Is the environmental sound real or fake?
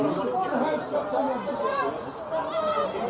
real